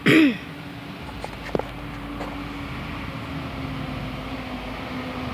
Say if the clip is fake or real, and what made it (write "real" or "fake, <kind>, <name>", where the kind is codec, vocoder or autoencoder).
real